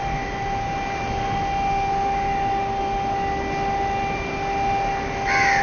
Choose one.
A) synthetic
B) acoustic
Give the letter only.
B